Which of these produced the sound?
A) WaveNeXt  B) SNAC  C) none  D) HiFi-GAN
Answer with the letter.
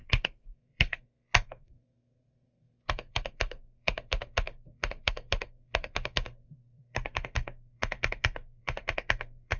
B